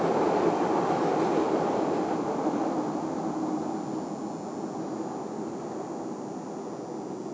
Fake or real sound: real